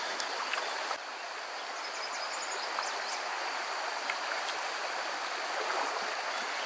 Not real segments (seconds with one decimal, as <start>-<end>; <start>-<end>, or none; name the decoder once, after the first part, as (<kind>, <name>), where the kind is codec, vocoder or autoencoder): none